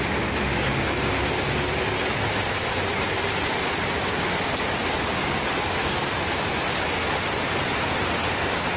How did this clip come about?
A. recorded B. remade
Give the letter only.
A